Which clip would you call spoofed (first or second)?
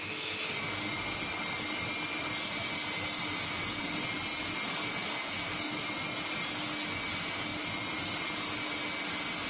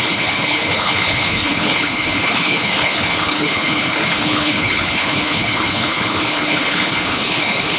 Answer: second